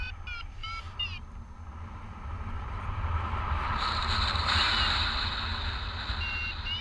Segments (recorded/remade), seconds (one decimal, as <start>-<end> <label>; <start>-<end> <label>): 0.0-0.6 recorded; 0.6-4.6 remade; 4.6-6.8 recorded